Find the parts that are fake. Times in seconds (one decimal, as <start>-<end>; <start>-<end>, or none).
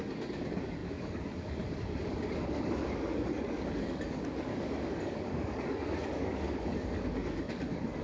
0.0-8.0